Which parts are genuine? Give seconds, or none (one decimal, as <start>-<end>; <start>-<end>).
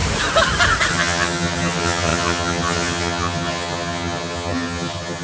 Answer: 0.0-0.9